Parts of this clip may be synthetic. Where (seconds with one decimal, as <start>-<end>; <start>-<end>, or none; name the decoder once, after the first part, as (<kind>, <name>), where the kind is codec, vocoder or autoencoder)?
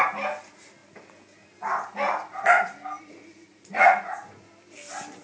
3.5-4.5 (vocoder, Vocos)